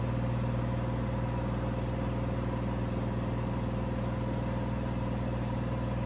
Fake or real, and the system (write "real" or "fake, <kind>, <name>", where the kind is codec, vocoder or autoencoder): real